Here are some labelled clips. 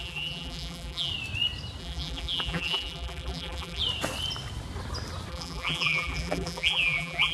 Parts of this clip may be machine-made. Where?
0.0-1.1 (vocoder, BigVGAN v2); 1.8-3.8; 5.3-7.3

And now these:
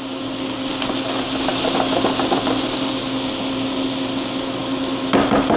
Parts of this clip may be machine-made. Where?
none

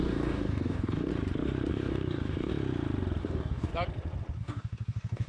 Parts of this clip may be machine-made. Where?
0.0-1.1 (codec, DAC); 1.7-2.5; 3.2-3.7; 4.4-5.3

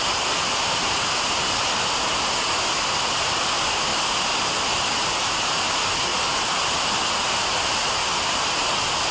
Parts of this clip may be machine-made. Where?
none